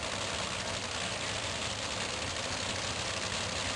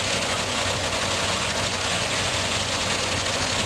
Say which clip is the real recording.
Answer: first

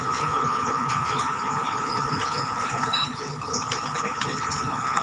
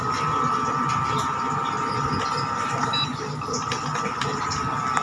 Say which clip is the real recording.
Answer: second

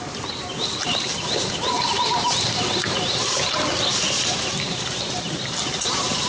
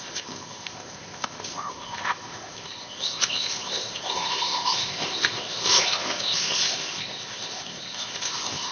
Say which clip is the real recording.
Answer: first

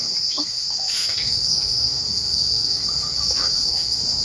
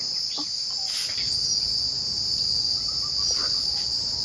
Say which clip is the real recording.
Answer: second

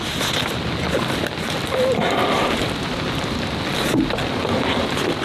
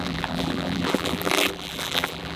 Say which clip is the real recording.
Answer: first